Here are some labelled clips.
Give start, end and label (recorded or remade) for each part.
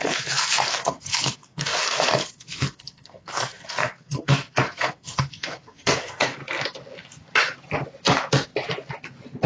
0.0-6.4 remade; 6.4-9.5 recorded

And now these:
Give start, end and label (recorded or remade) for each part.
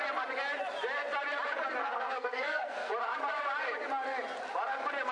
0.0-1.8 recorded; 1.8-2.9 remade; 2.9-5.1 recorded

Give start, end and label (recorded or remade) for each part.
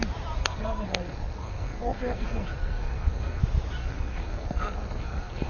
0.0-0.4 recorded; 0.4-3.4 remade; 3.4-3.8 recorded; 3.8-5.5 remade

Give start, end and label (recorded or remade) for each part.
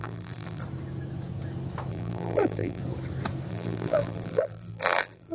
0.0-0.6 remade; 0.6-1.9 recorded; 1.9-2.8 remade; 2.8-3.5 recorded; 3.5-5.3 remade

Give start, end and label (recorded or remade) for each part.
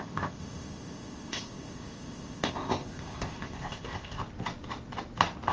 0.0-4.2 remade; 4.2-5.5 recorded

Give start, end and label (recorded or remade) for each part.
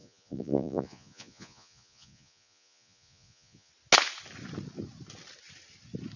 0.0-3.7 remade; 3.7-6.2 recorded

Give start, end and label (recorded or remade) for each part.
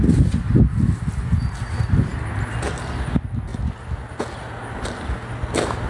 0.0-5.9 recorded